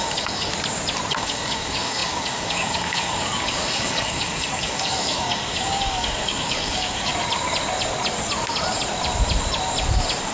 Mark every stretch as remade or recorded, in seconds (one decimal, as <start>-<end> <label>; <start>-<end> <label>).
0.0-0.5 remade; 0.5-1.1 recorded; 1.1-7.1 remade; 7.1-10.3 recorded